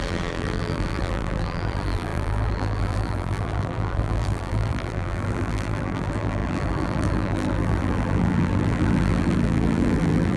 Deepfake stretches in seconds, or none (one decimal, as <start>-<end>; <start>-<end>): 0.0-10.4